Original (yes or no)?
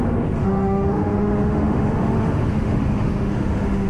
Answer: no